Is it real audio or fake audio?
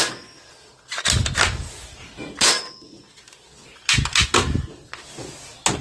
real